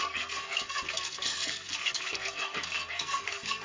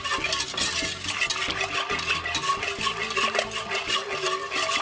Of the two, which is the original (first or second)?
second